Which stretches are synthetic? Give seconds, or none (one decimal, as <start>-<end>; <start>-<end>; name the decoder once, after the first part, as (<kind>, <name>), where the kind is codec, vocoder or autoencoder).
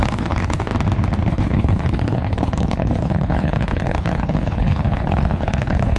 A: 0.0-0.7 (codec, HILCodec); 1.3-6.0